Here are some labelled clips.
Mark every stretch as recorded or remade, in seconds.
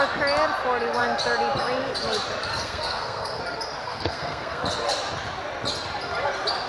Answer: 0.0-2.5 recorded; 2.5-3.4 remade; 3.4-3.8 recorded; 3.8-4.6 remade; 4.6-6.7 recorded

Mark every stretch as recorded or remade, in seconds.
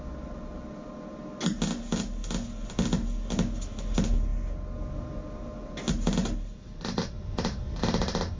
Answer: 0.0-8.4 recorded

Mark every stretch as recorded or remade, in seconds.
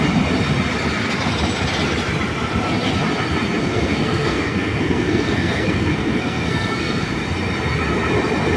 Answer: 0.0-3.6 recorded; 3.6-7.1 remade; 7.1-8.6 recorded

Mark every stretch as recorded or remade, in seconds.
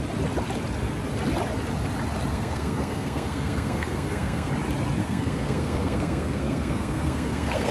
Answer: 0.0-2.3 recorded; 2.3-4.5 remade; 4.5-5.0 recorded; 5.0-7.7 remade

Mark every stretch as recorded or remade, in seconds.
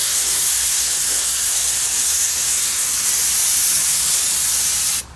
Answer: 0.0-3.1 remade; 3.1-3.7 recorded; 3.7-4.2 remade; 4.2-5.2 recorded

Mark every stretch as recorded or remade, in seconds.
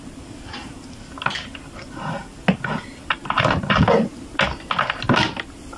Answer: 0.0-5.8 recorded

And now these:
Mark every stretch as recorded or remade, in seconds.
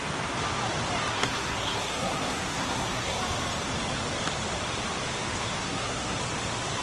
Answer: 0.0-1.1 recorded; 1.1-3.2 remade; 3.2-5.6 recorded; 5.6-6.2 remade; 6.2-6.8 recorded